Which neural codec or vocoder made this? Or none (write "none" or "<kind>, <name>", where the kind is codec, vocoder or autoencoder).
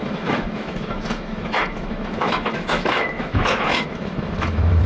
autoencoder, DAC-VAE